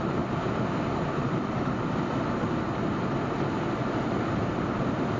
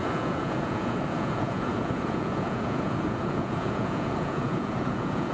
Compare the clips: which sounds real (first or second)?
first